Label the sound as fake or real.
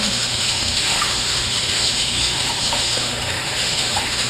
fake